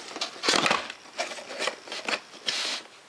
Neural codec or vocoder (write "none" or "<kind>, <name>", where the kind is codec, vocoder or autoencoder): none